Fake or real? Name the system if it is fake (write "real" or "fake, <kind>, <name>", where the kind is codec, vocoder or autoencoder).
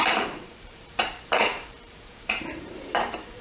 fake, vocoder, BigVGAN v2